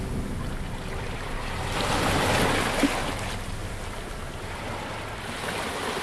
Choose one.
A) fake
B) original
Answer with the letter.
B